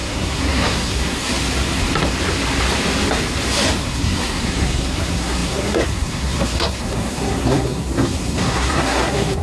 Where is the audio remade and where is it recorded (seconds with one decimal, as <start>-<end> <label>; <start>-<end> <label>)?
0.0-1.3 remade; 1.3-3.8 recorded; 3.8-9.4 remade